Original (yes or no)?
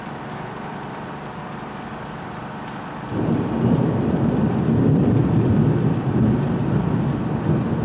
yes